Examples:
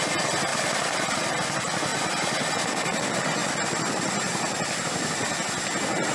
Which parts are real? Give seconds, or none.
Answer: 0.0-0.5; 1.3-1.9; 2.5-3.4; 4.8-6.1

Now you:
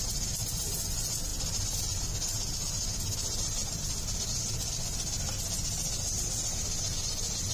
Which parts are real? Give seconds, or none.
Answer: 0.0-7.5

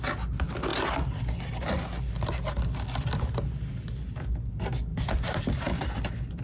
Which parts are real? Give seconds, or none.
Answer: 0.0-6.4

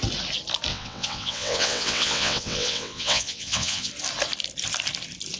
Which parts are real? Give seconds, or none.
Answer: 0.0-0.7; 3.9-5.4

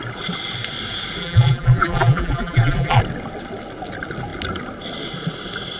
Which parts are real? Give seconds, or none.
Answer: 0.0-1.2; 3.0-5.8